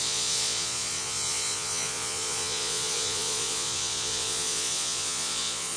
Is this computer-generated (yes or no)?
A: yes